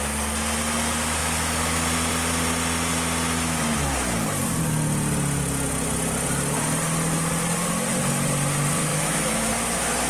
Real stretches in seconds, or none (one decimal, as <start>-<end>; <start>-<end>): 0.0-8.9; 9.5-10.1